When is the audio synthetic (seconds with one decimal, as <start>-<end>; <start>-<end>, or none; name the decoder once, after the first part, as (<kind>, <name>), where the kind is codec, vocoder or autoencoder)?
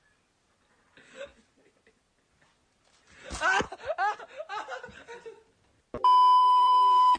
6.4-7.2 (codec, SNAC)